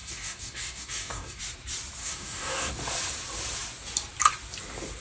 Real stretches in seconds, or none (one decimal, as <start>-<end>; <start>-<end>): 1.4-2.0; 2.7-5.0